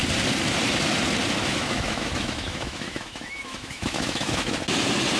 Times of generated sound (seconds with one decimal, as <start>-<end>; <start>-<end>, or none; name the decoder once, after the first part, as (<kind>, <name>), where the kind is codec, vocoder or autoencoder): 1.4-4.5 (autoencoder, DAC-VAE)